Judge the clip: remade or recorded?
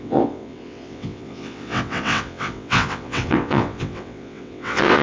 remade